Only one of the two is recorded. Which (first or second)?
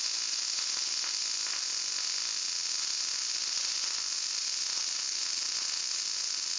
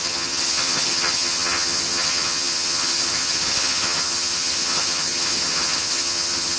first